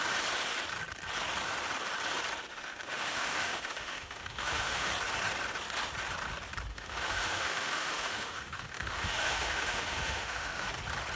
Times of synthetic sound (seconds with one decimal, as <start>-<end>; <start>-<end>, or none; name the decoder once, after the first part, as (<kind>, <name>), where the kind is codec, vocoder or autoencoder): 2.5-4.9 (autoencoder, DAC-VAE); 6.7-10.7